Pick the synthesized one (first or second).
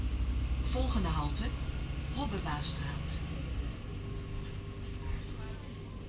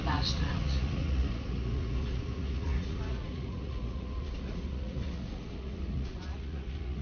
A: second